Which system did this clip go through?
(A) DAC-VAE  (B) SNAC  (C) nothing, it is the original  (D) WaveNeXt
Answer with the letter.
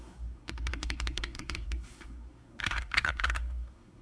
B